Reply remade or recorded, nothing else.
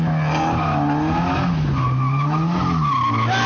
recorded